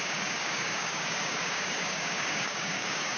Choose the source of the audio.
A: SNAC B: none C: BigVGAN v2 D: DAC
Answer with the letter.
D